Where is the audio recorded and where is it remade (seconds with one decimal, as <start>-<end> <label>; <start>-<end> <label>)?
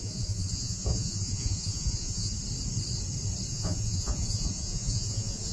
0.0-2.3 remade; 2.3-3.5 recorded; 3.5-5.5 remade